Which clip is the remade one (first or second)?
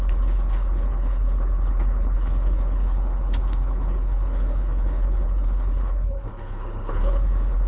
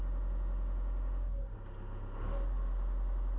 first